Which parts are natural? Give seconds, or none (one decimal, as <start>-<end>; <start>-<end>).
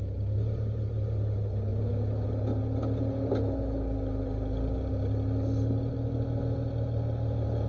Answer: 0.0-7.7